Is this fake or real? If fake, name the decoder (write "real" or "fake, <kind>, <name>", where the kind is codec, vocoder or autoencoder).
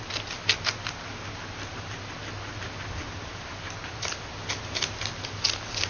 real